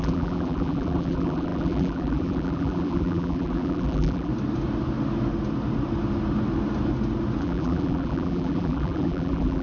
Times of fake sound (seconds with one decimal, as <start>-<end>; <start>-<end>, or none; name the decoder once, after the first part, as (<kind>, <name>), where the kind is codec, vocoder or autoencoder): 0.0-4.3 (vocoder, BigVGAN v2); 7.4-9.6